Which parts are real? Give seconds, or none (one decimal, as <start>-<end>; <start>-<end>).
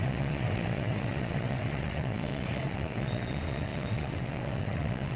none